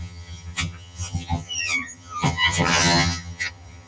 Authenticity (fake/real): fake